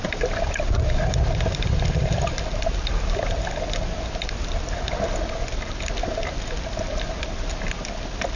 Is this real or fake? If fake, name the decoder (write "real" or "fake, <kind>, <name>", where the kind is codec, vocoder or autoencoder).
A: real